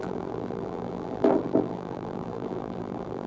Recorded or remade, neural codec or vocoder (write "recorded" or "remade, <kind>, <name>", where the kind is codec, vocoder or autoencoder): remade, vocoder, BigVGAN v2